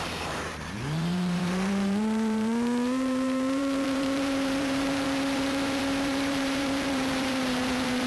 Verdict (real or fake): fake